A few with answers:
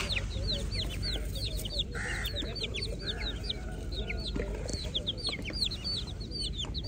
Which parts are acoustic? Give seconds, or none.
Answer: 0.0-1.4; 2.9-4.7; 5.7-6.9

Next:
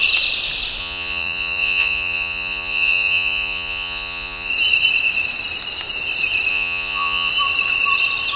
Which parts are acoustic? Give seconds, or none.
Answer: 0.0-0.8; 4.5-6.5; 7.3-8.4

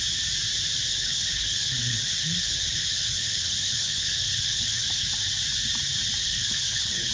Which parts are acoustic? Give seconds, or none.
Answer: 0.0-0.9; 5.2-6.2